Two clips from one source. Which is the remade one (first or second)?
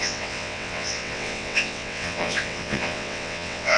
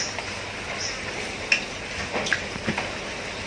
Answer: first